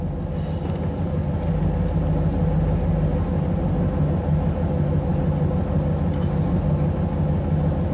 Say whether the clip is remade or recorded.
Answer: recorded